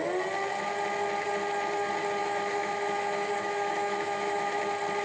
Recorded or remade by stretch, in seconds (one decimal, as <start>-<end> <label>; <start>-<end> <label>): 0.0-2.2 recorded; 2.2-4.6 remade; 4.6-5.0 recorded